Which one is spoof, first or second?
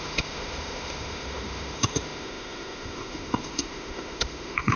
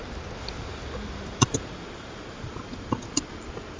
first